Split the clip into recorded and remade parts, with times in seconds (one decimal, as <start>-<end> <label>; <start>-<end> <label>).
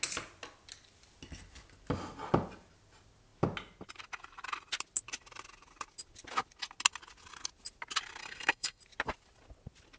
0.0-8.2 recorded; 8.2-8.8 remade; 8.8-10.0 recorded